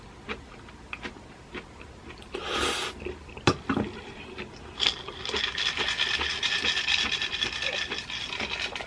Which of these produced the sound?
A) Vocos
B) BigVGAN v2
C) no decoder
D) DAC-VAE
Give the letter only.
C